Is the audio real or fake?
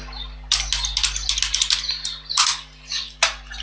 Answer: real